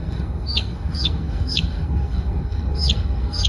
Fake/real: fake